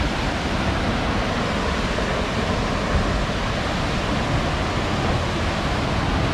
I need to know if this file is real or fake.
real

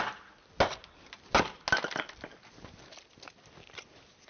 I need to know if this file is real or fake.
real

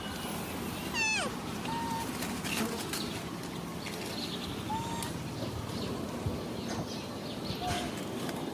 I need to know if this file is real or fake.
real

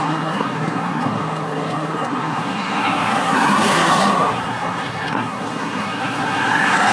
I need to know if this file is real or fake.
fake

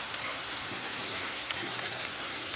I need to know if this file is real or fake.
fake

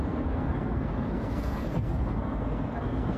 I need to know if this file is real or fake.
fake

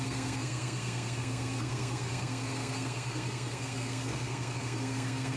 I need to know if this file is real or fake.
fake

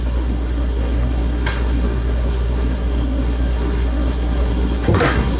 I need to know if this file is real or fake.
fake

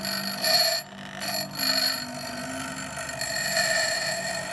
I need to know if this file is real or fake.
real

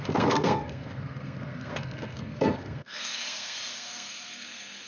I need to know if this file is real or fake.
fake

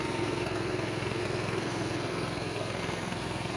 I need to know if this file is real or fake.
fake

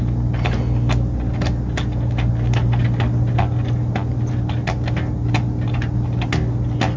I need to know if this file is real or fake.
real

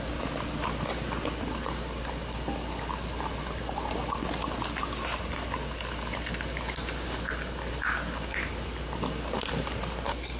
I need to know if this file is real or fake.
real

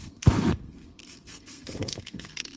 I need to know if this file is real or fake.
fake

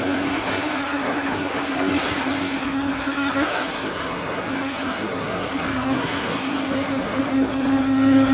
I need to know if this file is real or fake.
fake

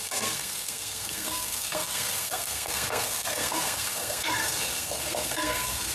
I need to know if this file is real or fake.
fake